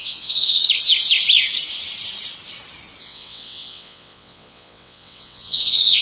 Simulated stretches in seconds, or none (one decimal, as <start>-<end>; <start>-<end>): 0.0-0.6; 3.0-6.0